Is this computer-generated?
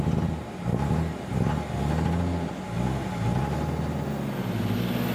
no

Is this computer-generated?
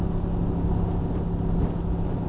no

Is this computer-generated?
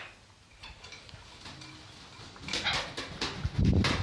no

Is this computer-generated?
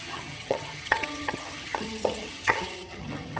yes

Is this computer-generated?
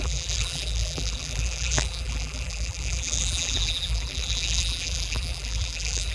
yes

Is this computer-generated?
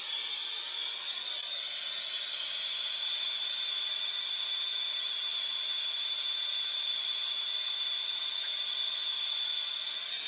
no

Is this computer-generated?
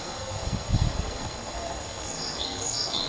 yes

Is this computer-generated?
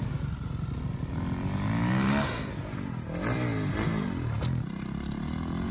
no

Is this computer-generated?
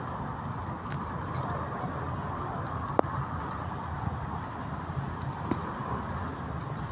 no